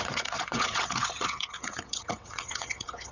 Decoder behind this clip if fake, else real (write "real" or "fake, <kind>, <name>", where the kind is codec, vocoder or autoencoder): fake, vocoder, WaveNeXt